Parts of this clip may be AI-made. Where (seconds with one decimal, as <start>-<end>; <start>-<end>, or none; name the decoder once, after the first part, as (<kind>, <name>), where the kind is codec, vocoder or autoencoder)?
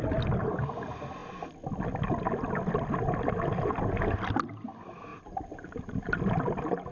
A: 5.1-6.2 (vocoder, BigVGAN v2)